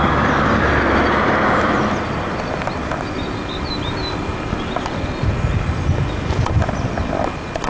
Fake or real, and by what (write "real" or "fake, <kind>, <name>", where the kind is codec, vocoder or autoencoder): real